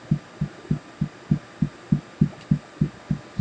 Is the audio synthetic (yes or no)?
no